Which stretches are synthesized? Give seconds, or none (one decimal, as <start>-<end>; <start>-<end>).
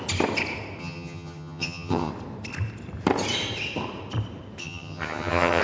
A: 0.8-2.1; 4.6-5.6